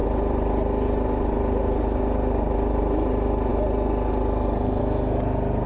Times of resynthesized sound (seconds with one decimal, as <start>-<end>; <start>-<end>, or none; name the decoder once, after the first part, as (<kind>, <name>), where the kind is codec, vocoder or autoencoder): none

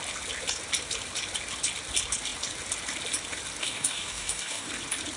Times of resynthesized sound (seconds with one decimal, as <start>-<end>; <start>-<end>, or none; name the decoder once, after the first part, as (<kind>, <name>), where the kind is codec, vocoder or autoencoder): 3.6-4.7 (codec, DAC)

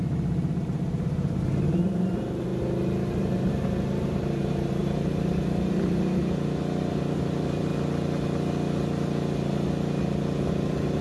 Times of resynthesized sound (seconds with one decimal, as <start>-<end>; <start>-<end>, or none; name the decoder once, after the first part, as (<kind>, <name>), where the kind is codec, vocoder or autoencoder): 0.0-2.5 (vocoder, BigVGAN v2); 3.1-6.2; 6.8-7.7; 10.5-11.0

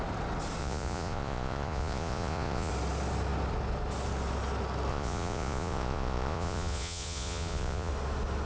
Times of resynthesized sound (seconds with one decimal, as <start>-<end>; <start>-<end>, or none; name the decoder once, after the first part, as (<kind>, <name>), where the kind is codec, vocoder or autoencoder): 0.6-2.7 (vocoder, Vocos); 4.9-7.9

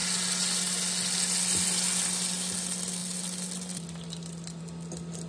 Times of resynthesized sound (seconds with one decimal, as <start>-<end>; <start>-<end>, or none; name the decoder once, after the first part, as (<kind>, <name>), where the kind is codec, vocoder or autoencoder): none

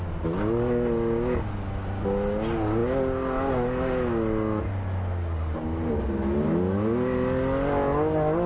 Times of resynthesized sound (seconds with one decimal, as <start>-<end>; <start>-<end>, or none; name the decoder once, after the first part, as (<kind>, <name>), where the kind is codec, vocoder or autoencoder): none